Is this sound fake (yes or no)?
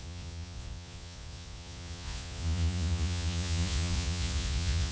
yes